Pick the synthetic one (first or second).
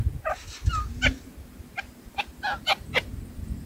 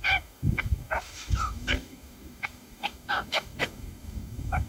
second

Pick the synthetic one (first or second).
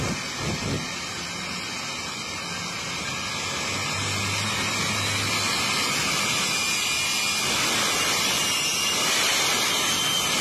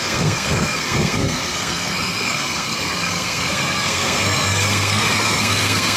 second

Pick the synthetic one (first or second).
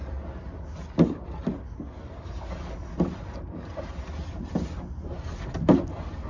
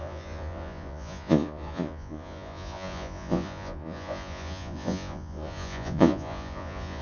second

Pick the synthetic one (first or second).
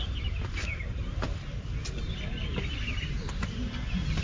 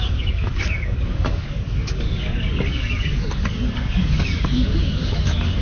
second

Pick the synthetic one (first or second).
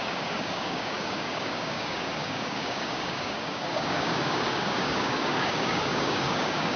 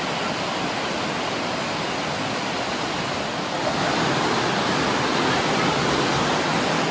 first